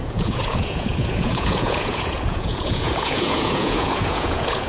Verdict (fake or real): fake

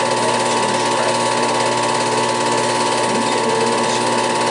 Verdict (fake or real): real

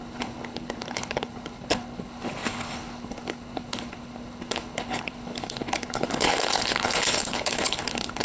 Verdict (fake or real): fake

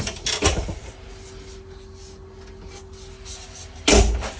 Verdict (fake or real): real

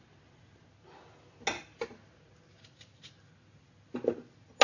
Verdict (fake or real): real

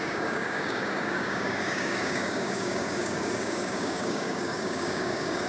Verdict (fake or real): fake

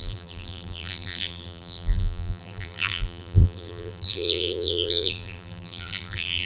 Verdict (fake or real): fake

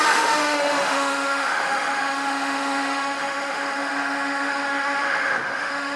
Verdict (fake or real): fake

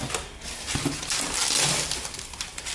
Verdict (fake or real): real